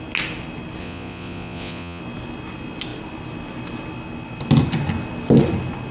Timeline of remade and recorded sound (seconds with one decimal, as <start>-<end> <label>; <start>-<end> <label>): 0.0-0.8 recorded; 0.8-2.0 remade; 2.0-5.9 recorded